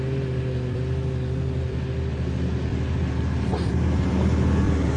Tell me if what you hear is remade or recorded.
recorded